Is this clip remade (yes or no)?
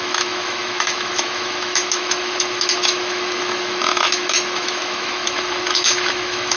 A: yes